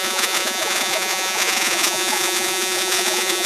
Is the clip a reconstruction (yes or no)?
yes